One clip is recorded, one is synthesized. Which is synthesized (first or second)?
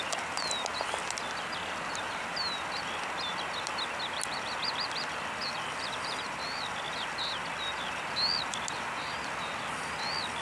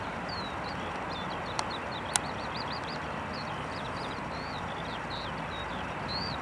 second